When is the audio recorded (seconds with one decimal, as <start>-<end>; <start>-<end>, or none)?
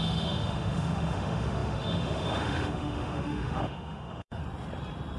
4.4-5.2